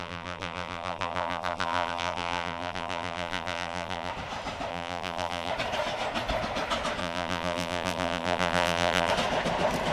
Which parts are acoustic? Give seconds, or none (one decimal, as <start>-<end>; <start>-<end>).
4.1-4.7; 5.5-7.0; 9.1-9.9